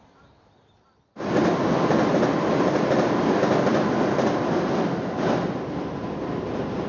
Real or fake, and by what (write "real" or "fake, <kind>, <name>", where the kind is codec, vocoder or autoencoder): real